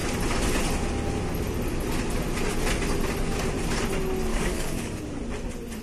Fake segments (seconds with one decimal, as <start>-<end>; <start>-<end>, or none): 4.3-5.0